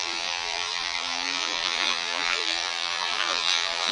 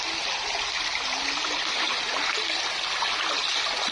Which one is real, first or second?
second